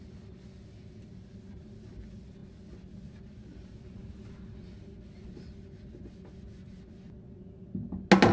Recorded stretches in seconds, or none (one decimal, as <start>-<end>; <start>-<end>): 0.0-8.3